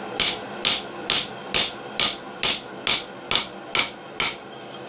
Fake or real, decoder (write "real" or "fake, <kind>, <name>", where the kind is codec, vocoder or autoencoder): real